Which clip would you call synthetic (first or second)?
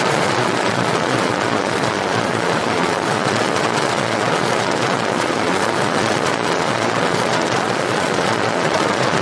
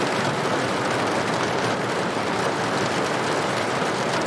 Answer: first